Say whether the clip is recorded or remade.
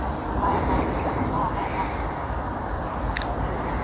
recorded